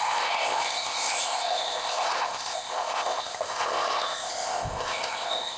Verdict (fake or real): fake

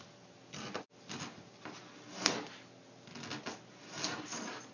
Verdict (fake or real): real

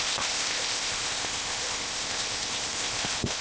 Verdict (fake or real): fake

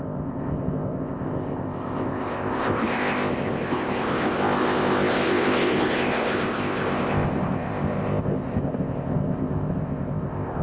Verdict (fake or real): fake